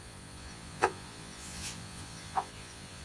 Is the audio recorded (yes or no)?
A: no